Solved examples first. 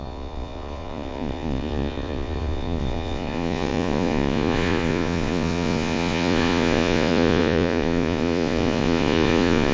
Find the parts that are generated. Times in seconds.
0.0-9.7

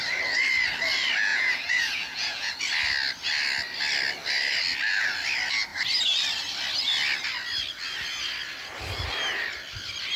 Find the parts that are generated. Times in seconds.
1.3-2.6

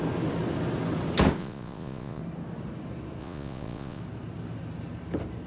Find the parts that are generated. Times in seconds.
1.4-2.2; 3.2-4.0

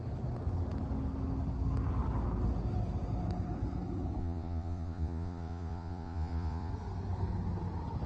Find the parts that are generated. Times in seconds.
4.2-6.7

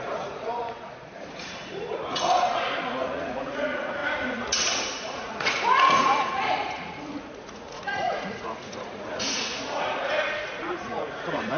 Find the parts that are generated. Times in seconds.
0.0-11.6

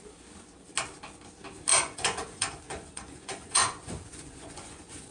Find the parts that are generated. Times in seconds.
1.7-5.1